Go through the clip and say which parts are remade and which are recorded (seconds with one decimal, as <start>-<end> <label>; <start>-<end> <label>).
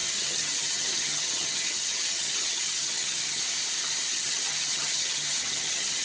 0.0-3.4 remade; 3.4-4.1 recorded; 4.1-6.0 remade